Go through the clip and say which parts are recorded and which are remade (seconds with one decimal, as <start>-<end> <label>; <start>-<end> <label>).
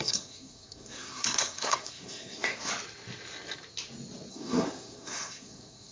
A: 0.0-2.7 remade; 2.7-4.3 recorded; 4.3-5.9 remade